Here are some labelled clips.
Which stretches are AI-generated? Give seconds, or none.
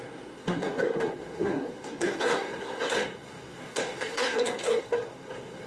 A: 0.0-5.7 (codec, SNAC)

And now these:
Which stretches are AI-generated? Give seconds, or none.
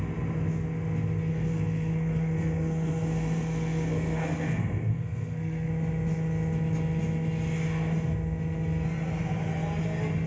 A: 1.3-5.7 (codec, SNAC)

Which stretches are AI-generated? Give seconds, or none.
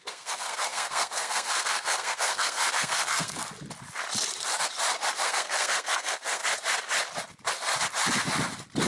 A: 0.0-3.4 (codec, SNAC); 5.2-6.4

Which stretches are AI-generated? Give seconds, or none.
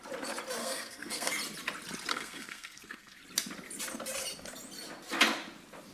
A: 0.6-1.3 (codec, SNAC); 2.1-3.2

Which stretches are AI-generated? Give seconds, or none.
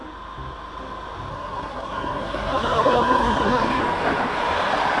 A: 1.3-3.8 (codec, SNAC)